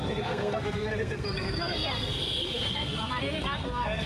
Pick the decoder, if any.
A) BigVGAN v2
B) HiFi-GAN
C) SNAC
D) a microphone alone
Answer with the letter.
C